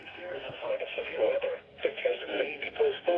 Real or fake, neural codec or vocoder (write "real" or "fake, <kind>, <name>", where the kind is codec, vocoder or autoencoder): fake, codec, SNAC